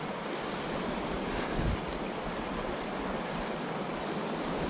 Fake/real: real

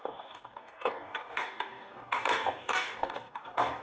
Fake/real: fake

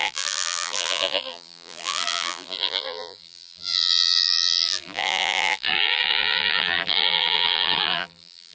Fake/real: fake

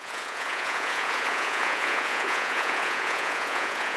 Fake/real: fake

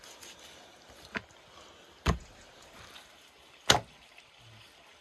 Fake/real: real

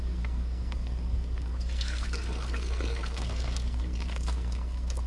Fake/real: fake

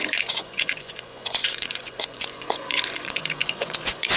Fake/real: fake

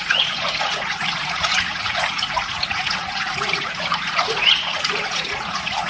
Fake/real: fake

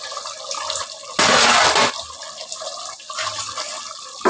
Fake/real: real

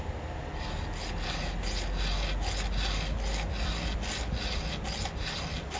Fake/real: real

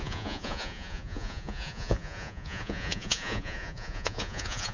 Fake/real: fake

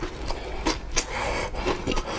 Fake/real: real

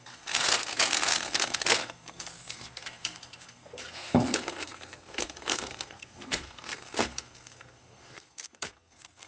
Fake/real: fake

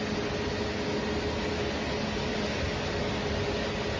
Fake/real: real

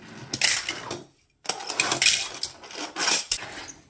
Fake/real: real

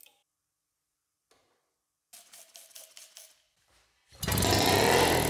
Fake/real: real